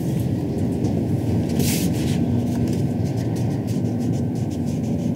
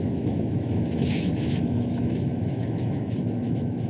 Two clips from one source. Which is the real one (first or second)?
first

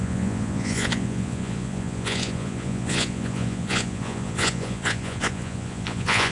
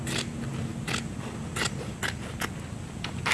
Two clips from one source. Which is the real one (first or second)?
second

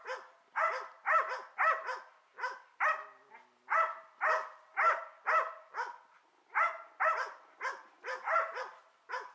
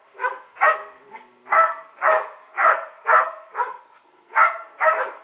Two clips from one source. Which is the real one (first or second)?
first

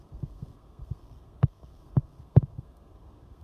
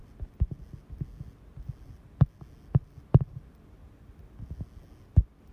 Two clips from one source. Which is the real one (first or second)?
second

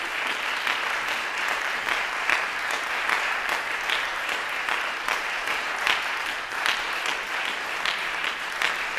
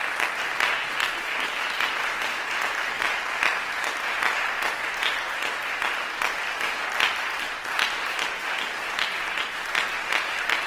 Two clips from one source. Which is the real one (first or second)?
second